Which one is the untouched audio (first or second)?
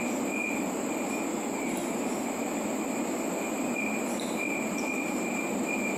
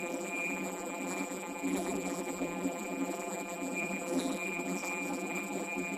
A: first